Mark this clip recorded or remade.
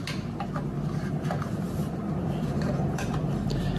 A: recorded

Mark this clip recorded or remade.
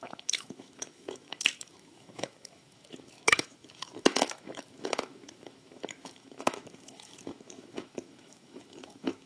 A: remade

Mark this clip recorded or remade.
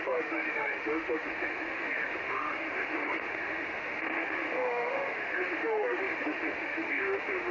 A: remade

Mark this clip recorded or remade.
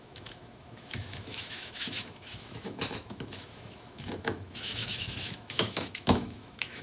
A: remade